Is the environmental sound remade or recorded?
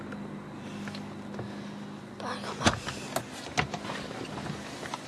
recorded